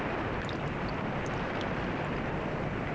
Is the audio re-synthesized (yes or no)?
no